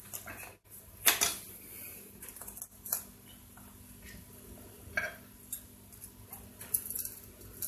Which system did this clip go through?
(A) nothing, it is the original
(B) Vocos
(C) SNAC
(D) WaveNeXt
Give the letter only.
A